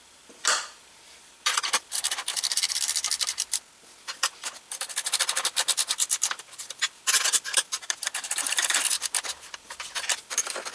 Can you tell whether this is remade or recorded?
remade